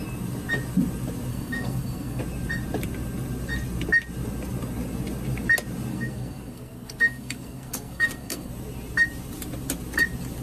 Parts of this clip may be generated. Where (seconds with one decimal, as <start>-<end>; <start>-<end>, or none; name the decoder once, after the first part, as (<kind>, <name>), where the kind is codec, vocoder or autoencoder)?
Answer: 1.3-2.2 (codec, SNAC); 5.9-8.5